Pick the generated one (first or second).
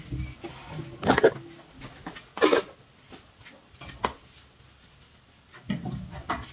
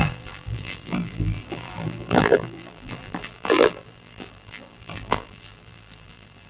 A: second